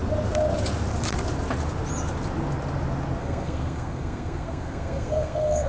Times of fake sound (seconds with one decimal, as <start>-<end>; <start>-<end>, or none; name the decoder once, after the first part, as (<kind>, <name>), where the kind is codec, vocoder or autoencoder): 3.2-5.7 (codec, SNAC)